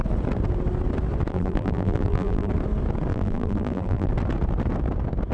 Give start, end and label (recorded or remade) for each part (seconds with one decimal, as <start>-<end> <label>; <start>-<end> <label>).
0.0-1.3 recorded; 1.3-2.5 remade; 2.5-3.1 recorded; 3.1-4.1 remade; 4.1-5.3 recorded